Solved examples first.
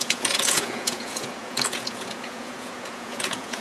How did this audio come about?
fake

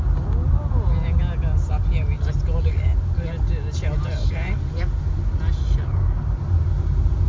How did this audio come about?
real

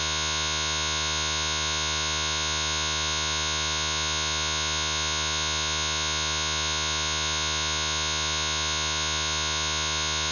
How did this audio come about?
real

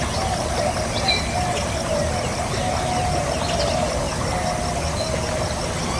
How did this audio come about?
real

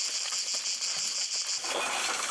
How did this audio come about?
real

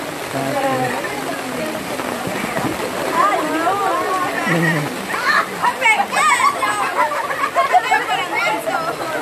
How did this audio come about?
real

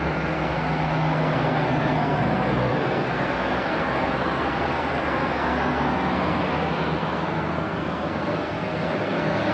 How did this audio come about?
fake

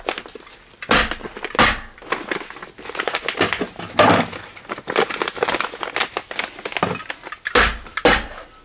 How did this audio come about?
real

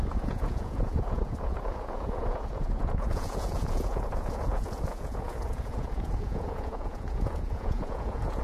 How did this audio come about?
fake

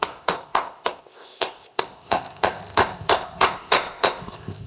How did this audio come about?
fake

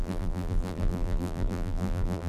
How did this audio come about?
fake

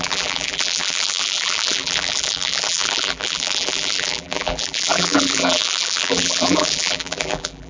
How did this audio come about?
fake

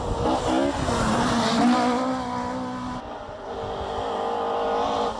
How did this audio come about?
real